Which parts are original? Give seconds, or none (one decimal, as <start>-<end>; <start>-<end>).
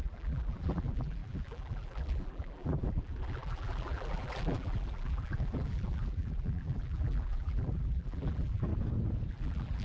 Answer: 8.7-9.3